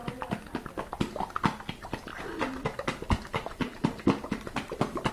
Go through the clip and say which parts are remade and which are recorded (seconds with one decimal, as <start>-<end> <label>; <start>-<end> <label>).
0.0-2.1 recorded; 2.1-5.1 remade